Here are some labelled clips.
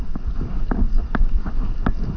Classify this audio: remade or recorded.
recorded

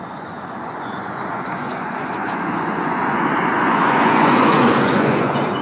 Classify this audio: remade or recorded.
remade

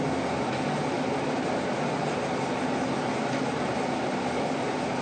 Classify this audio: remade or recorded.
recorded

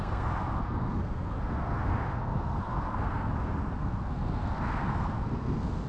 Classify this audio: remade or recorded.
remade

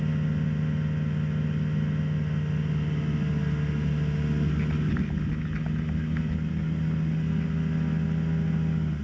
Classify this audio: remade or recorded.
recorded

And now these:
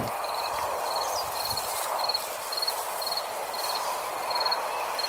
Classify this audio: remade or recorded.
recorded